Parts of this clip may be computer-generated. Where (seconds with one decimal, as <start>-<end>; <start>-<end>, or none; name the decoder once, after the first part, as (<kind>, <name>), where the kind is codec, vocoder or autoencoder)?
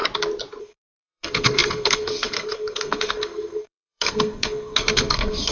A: 0.6-5.5 (codec, SNAC)